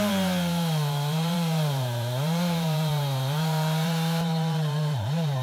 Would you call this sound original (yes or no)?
no